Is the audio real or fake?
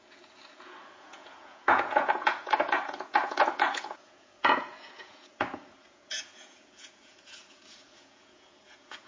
fake